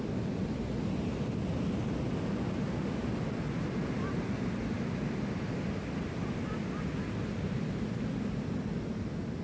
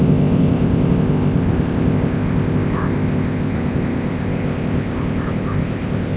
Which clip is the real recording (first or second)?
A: first